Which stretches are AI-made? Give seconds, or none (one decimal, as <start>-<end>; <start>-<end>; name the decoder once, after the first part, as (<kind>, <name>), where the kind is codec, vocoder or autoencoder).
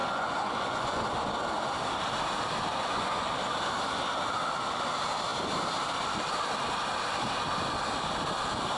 0.0-1.0 (vocoder, Vocos); 2.7-3.2